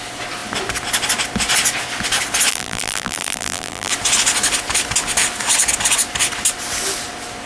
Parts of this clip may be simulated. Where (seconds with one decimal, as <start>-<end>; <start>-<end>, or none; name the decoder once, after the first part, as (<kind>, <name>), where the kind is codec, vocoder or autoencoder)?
2.5-3.9 (vocoder, BigVGAN v2)